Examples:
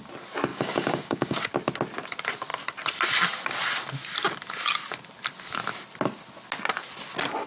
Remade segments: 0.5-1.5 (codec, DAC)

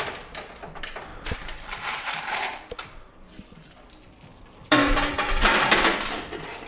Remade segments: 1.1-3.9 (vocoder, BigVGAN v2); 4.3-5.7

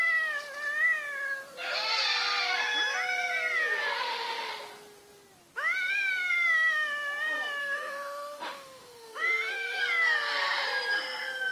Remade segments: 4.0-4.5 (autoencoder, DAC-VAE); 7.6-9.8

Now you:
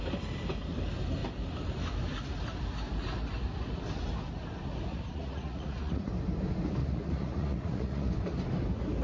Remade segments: 4.9-6.1 (vocoder, Vocos); 6.8-8.1

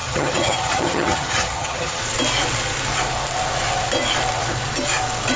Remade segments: 0.0-2.0 (vocoder, HiFi-GAN)

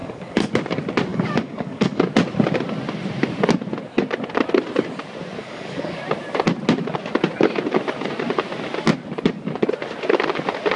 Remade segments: 0.0-0.5 (codec, DAC); 1.1-2.0; 5.4-6.0

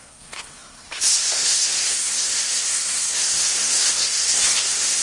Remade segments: 0.0-5.0 (codec, SNAC)

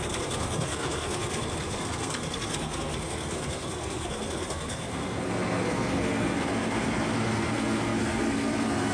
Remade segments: 0.0-8.9 (codec, SNAC)